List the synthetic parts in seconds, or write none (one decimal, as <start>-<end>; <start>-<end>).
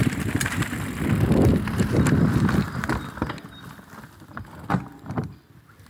0.0-0.6; 1.5-3.1; 4.7-5.3